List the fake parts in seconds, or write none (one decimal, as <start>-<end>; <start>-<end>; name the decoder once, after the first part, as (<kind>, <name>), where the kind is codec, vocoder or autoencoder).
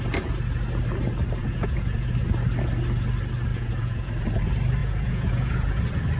1.4-2.1 (vocoder, Vocos); 3.5-4.1; 4.8-5.8